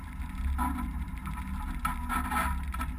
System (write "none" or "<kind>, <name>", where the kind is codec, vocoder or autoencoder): none